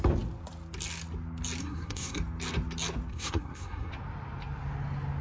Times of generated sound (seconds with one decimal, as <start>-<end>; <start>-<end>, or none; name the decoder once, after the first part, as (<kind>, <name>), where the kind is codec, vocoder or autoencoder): 1.6-2.2 (codec, SNAC); 3.1-3.9